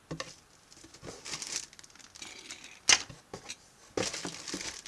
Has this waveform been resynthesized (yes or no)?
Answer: no